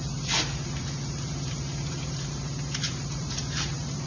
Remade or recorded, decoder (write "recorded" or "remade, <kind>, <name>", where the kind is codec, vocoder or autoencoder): remade, vocoder, BigVGAN v2